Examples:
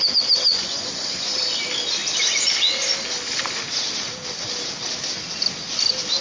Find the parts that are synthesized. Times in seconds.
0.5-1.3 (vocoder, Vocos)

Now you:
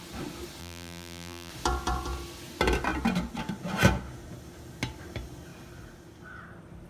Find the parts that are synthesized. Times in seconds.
0.6-1.5 (vocoder, BigVGAN v2)

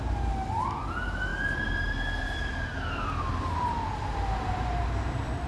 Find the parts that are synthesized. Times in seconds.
none

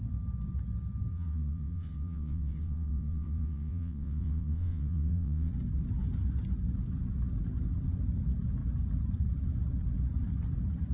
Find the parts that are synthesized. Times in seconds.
1.1-5.5 (vocoder, WaveNeXt)

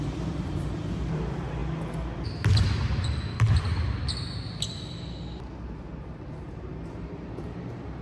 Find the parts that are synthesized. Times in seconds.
0.0-1.6 (vocoder, BigVGAN v2); 3.2-3.7; 6.9-8.0

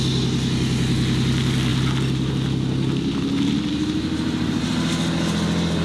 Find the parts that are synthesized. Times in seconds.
3.7-4.7 (vocoder, BigVGAN v2)

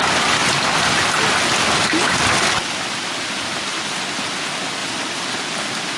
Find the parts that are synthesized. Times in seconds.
0.4-4.0 (vocoder, BigVGAN v2); 4.8-5.4

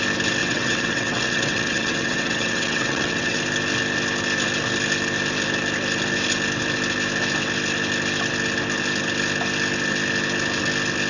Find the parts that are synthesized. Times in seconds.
0.4-3.4 (vocoder, WaveNeXt)